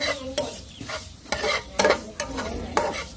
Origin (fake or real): fake